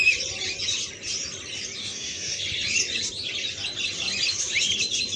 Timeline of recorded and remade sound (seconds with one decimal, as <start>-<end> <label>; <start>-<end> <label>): 0.0-1.8 recorded; 1.8-2.4 remade; 2.4-5.2 recorded